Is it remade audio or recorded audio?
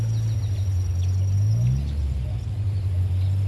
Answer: recorded